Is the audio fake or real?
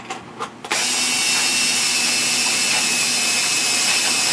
real